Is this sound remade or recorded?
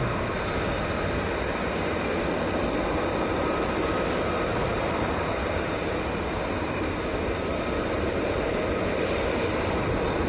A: recorded